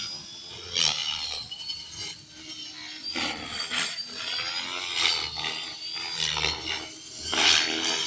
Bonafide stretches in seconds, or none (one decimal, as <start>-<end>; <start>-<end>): 0.0-8.1